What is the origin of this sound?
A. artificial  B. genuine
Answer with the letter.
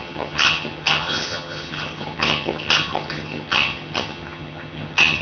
A